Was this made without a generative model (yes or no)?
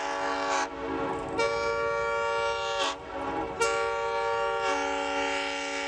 yes